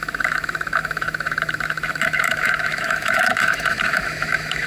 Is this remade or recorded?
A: remade